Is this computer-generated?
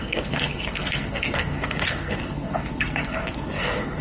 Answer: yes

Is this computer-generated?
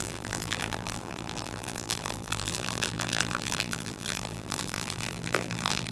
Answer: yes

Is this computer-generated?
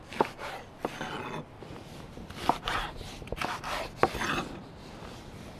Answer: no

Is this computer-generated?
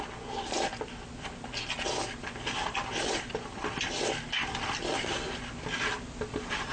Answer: no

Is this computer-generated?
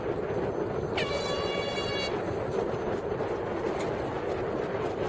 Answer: no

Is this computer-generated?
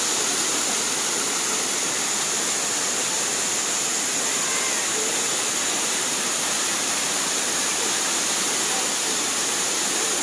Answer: no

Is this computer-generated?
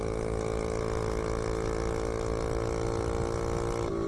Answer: no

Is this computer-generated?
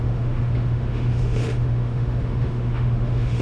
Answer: yes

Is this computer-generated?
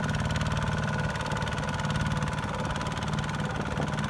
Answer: no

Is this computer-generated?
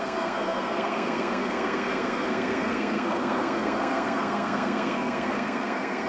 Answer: yes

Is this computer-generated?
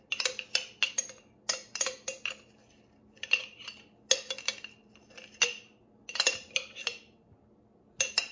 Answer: no